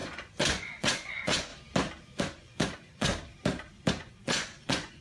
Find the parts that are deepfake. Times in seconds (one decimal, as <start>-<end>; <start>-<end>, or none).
0.0-1.5; 2.2-3.1; 3.9-5.0

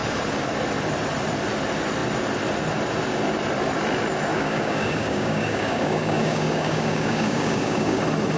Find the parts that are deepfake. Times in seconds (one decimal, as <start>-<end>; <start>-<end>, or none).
4.3-8.0

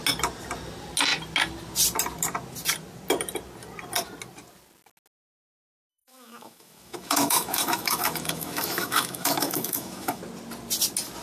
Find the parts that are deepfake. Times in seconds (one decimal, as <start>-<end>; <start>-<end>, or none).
5.9-10.2

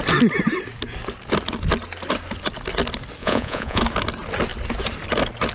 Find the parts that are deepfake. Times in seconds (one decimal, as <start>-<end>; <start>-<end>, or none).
3.2-3.8

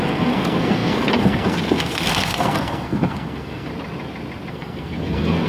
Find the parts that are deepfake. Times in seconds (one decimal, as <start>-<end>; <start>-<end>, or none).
0.0-3.7; 4.5-5.5

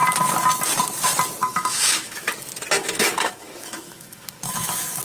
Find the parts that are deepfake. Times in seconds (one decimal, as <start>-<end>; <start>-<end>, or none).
1.4-2.3; 2.8-5.0

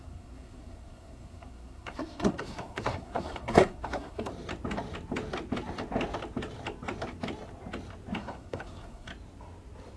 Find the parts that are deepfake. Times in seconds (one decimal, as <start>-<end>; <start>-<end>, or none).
0.0-4.3; 8.2-9.1

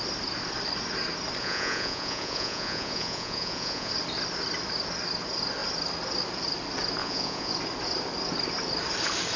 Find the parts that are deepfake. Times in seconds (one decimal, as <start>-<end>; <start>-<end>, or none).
1.4-3.9; 7.0-7.5